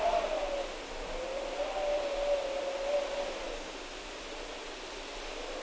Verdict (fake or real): real